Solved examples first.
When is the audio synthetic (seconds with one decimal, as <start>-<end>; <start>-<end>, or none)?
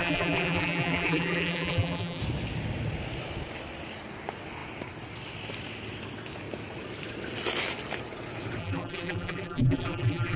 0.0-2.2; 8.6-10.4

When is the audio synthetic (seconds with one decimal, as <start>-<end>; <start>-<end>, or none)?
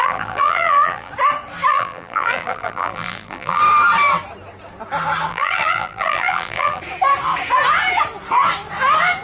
0.0-1.1; 1.7-3.6; 5.3-6.8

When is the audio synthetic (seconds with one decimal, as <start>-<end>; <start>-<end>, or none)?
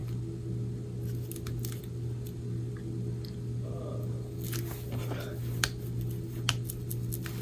none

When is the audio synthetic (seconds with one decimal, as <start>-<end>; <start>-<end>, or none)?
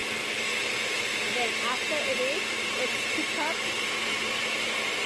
2.0-5.1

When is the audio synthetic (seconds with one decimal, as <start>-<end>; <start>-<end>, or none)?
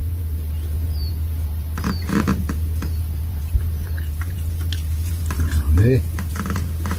0.0-7.0